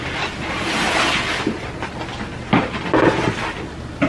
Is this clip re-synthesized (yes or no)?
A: no